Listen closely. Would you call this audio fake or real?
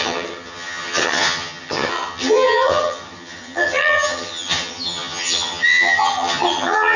fake